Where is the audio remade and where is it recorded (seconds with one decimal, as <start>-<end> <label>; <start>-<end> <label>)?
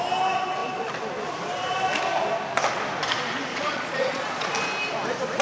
0.0-3.5 recorded; 3.5-4.5 remade; 4.5-5.4 recorded